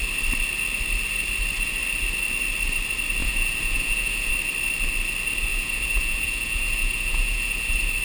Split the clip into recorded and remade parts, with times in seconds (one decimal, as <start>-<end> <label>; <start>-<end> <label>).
0.0-3.2 recorded; 3.2-4.3 remade; 4.3-5.5 recorded; 5.5-8.0 remade

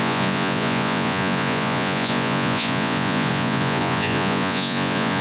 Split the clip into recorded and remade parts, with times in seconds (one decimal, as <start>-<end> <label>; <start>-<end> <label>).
0.0-5.2 remade

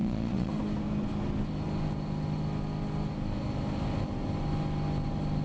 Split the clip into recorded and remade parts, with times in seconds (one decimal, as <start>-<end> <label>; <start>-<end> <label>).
0.0-0.5 remade; 0.5-5.4 recorded

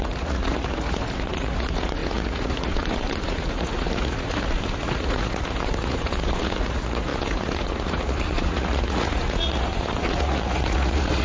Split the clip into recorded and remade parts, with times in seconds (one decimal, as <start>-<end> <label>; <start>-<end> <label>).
0.0-11.2 remade